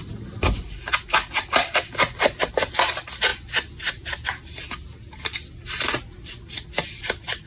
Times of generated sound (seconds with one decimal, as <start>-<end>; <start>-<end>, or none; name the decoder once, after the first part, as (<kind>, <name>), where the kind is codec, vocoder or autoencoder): 0.0-3.3 (vocoder, BigVGAN v2); 7.0-7.5